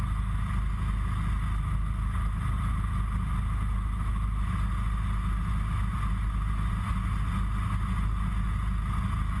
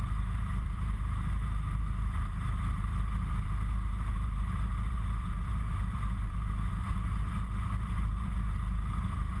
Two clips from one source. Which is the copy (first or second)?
second